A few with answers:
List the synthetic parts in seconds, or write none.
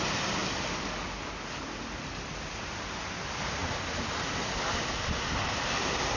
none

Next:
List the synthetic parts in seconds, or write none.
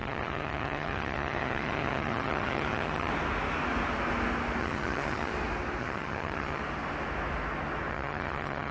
0.0-3.1 (vocoder, HiFi-GAN); 4.6-5.3; 5.8-6.6; 7.9-8.7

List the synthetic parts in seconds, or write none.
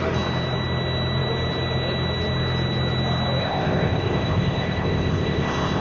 3.4-5.8 (codec, ZipCodec)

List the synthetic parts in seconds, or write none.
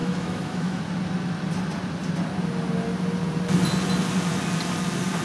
0.0-0.8 (autoencoder, DAC-VAE)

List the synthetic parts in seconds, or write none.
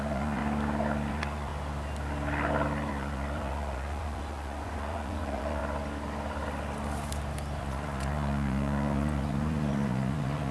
0.0-0.4 (vocoder, Vocos); 1.1-1.5; 2.9-5.6; 7.6-10.5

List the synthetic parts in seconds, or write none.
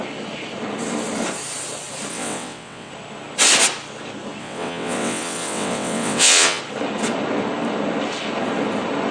2.1-2.9 (vocoder, WaveNeXt); 4.4-6.6